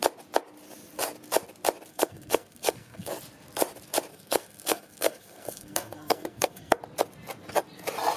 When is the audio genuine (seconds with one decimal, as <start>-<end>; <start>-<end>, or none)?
0.0-1.9; 3.1-4.1; 6.8-8.2